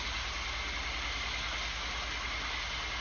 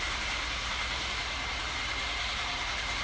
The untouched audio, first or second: first